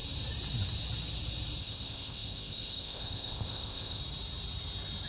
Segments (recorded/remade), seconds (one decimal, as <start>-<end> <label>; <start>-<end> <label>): 0.0-1.6 recorded; 1.6-4.0 remade; 4.0-5.1 recorded